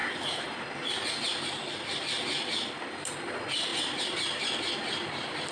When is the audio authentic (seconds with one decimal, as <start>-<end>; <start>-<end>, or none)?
0.0-5.5